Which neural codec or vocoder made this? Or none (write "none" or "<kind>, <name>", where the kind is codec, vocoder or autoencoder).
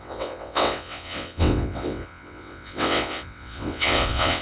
vocoder, WaveNeXt